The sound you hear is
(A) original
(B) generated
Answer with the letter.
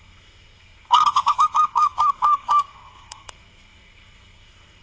B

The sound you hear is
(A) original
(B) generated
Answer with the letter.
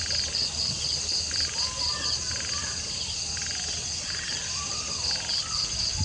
A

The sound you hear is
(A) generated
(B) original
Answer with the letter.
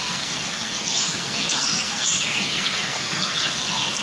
A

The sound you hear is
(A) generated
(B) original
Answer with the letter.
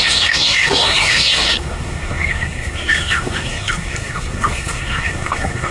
A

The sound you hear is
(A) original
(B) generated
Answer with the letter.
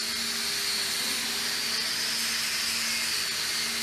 A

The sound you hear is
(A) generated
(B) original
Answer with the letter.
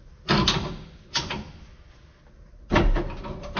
B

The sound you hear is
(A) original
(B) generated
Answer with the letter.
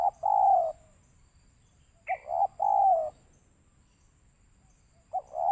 A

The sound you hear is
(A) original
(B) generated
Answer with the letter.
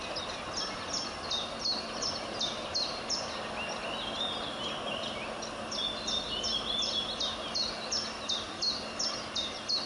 A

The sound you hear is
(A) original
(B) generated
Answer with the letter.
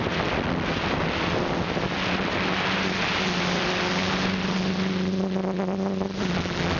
A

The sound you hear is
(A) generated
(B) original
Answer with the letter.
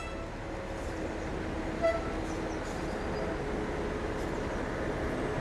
B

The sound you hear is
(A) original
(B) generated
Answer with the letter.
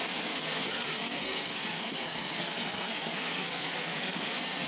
B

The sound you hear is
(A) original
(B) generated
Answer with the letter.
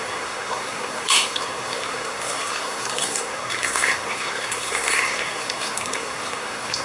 B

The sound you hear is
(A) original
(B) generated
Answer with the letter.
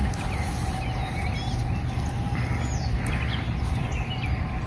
A